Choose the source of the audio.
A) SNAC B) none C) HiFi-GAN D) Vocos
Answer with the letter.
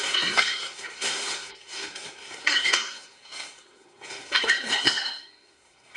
A